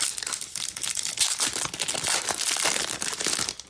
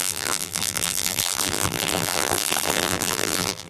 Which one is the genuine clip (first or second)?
first